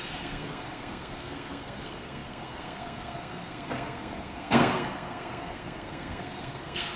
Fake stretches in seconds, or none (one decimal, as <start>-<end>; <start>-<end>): 0.0-7.0